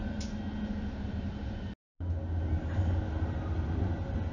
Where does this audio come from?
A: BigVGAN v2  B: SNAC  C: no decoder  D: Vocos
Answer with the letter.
C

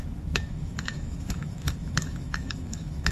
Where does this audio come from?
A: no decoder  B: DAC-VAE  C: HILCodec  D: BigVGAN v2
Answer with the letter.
B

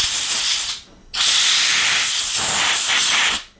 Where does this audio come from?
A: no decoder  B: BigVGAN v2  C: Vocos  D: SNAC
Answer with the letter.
A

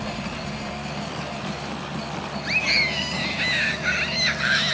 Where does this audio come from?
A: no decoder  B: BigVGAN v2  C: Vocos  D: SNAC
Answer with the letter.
A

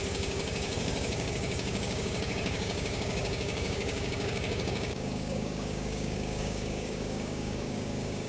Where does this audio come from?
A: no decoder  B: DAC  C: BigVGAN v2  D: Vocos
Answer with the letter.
B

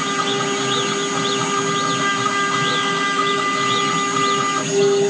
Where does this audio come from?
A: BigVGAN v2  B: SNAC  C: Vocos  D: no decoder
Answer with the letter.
D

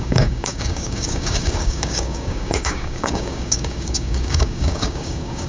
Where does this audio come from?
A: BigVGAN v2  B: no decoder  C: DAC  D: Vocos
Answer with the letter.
C